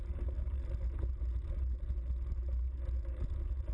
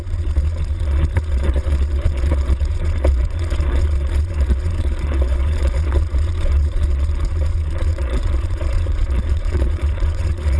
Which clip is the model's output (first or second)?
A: second